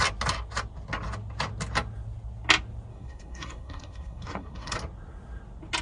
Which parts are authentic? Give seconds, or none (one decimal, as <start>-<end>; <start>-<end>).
0.0-2.9; 4.8-5.8